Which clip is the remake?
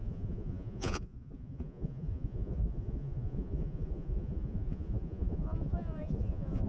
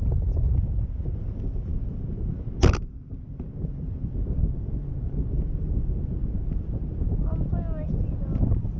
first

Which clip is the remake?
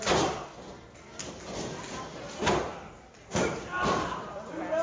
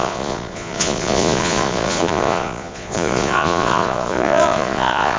second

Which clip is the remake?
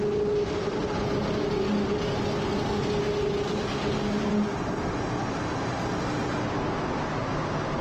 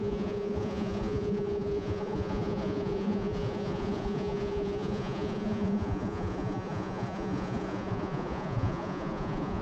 second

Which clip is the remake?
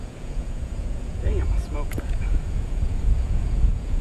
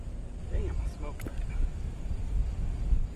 first